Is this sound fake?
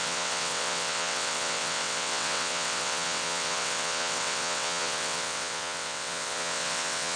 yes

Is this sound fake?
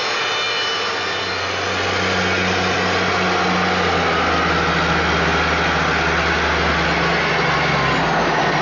no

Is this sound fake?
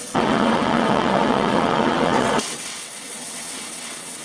yes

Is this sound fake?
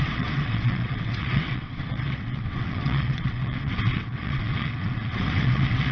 yes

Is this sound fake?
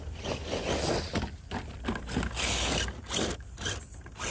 no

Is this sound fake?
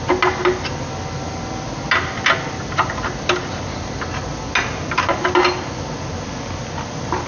no